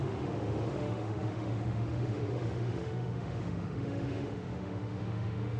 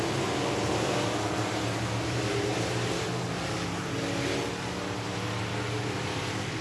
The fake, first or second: first